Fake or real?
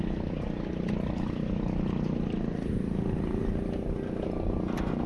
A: real